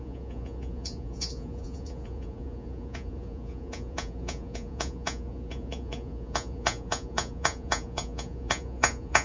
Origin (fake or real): fake